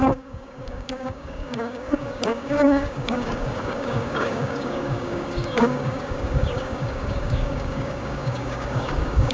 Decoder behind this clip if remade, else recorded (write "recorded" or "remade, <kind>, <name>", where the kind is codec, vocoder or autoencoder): remade, codec, DAC